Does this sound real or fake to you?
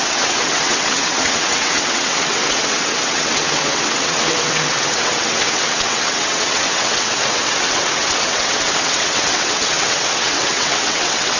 fake